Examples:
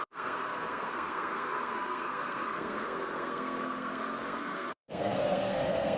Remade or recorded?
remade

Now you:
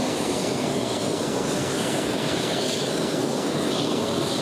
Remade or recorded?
remade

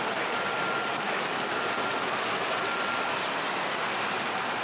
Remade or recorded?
recorded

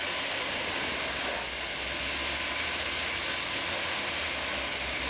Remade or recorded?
recorded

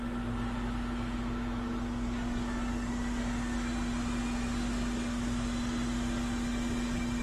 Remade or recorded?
recorded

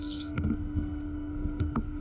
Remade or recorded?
remade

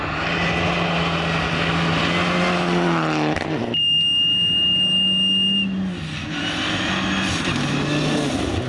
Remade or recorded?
recorded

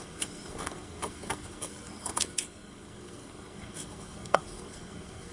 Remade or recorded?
remade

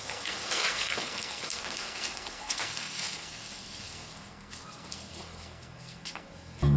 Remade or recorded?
remade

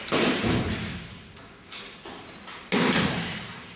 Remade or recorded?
recorded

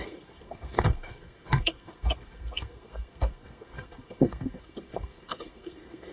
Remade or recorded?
remade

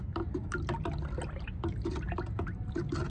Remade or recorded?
recorded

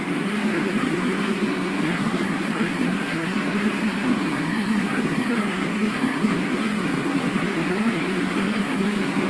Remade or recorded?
remade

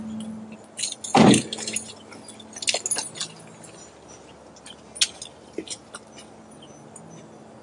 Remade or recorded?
recorded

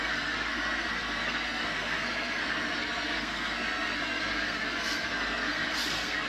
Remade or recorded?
remade